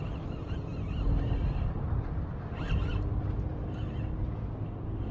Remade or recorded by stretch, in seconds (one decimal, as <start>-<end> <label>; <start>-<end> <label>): 0.0-5.1 recorded